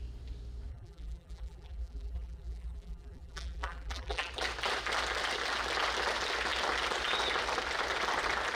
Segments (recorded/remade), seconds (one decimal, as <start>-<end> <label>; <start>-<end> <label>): 0.0-0.7 recorded; 0.7-4.3 remade; 4.3-8.5 recorded